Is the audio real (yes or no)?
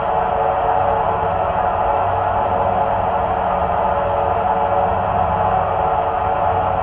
yes